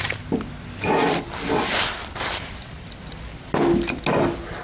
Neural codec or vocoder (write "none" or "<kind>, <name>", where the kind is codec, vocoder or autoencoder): none